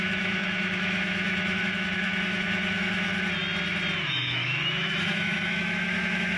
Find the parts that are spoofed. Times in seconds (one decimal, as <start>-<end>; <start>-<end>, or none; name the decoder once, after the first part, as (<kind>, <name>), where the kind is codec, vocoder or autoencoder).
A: 0.0-3.1 (autoencoder, DAC-VAE); 4.0-6.4